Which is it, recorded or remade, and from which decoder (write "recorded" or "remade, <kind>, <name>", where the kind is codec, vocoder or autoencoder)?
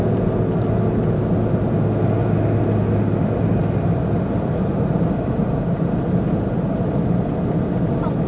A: recorded